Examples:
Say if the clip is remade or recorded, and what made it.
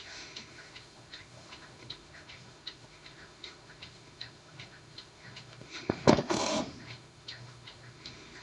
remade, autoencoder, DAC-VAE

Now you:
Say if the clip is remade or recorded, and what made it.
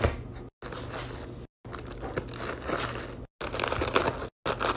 recorded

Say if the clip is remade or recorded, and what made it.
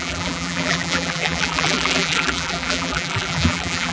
remade, vocoder, BigVGAN v2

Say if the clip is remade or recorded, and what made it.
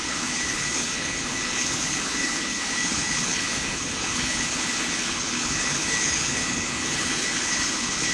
remade, codec, HILCodec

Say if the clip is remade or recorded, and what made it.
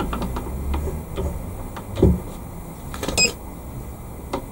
recorded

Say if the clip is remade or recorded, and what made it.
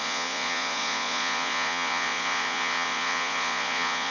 remade, vocoder, Vocos